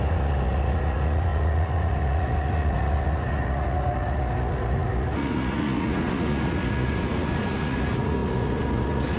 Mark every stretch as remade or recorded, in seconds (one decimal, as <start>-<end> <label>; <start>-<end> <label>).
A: 0.0-9.2 remade